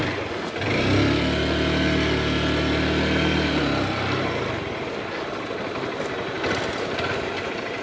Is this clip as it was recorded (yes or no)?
yes